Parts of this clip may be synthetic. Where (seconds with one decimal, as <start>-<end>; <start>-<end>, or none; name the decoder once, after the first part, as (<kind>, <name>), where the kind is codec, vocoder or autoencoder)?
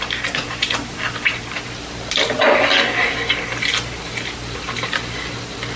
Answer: 0.0-2.4 (vocoder, BigVGAN v2); 4.1-5.8